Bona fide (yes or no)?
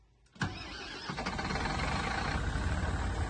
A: yes